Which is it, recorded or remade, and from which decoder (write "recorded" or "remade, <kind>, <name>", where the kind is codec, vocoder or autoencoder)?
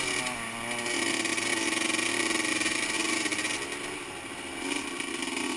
recorded